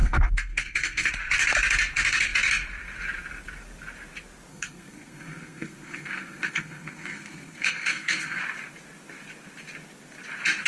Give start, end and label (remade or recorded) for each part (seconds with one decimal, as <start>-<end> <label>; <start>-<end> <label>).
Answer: 0.0-1.1 remade; 1.1-4.5 recorded; 4.5-8.4 remade; 8.4-10.7 recorded